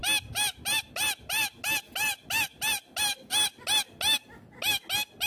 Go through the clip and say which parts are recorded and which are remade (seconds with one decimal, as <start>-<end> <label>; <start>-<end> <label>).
0.0-5.3 recorded